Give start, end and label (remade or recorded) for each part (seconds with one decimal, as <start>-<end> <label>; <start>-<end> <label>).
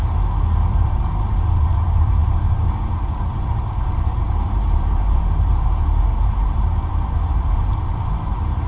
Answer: 0.0-0.7 recorded; 0.7-8.7 remade